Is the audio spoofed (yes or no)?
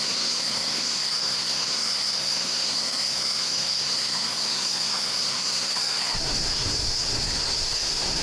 yes